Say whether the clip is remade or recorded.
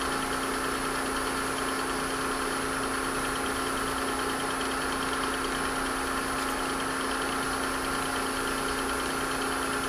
recorded